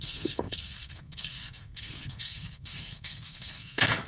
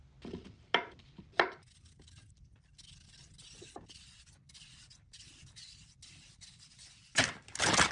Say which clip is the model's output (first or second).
first